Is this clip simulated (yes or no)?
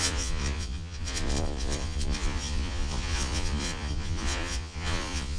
yes